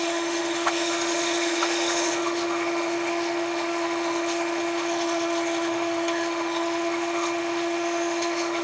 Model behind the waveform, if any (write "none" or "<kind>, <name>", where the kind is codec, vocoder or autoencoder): autoencoder, DAC-VAE